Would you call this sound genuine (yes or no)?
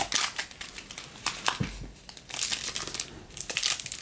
yes